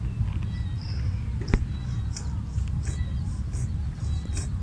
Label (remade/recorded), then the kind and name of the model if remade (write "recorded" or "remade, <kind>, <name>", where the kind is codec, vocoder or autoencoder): recorded